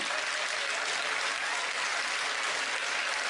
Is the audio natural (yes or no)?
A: yes